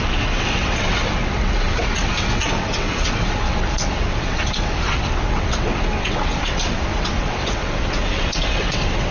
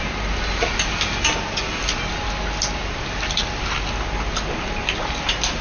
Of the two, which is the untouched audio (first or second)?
second